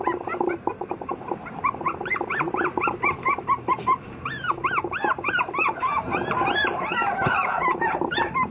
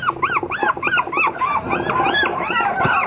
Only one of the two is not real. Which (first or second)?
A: first